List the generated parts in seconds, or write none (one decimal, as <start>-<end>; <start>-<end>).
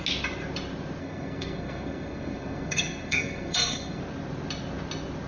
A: 1.0-4.0